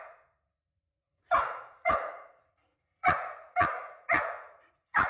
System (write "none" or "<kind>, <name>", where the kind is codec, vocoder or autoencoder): vocoder, Vocos